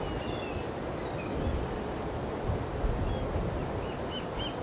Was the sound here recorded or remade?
recorded